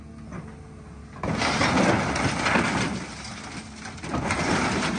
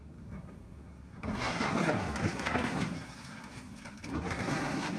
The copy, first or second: second